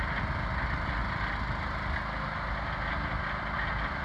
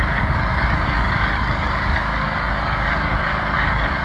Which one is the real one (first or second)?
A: first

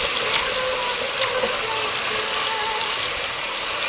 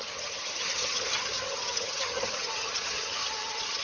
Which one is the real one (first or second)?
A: first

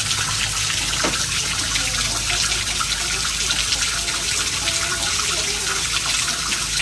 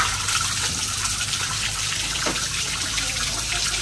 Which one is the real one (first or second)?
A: first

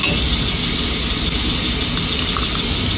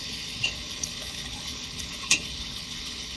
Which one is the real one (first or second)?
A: first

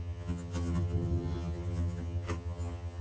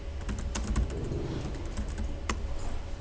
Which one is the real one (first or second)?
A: second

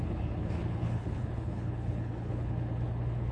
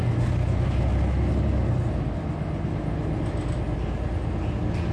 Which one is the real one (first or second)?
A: second